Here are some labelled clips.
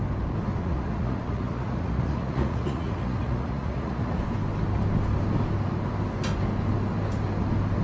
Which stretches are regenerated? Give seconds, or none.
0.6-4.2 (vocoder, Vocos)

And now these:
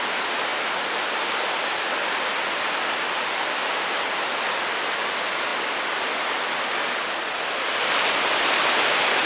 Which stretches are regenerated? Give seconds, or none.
none

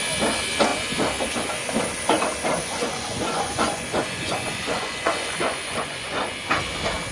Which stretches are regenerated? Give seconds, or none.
2.6-6.2 (vocoder, Vocos)